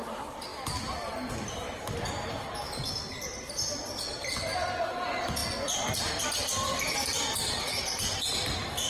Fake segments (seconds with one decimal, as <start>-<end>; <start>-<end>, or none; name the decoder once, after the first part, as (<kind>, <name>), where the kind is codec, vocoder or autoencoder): none